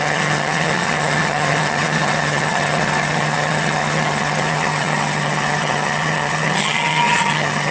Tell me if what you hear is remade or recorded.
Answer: remade